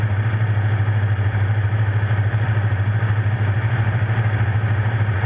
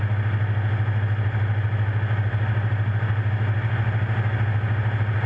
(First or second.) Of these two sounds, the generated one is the first